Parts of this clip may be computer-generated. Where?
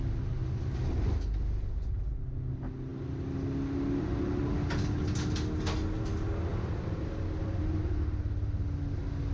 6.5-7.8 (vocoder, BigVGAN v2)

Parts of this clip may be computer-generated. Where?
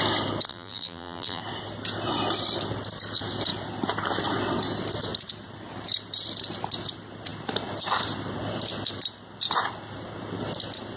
0.5-1.4 (vocoder, BigVGAN v2)